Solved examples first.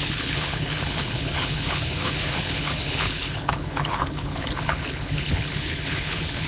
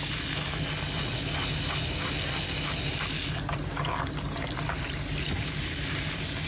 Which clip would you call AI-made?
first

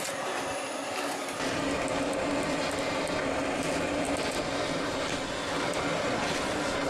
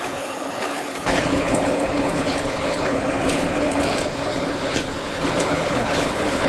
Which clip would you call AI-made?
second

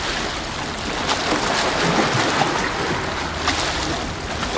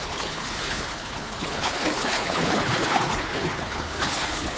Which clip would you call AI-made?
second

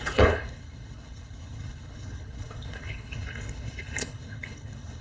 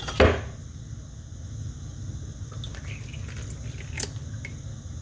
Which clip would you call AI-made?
first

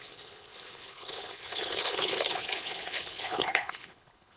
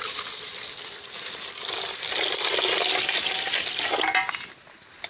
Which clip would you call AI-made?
first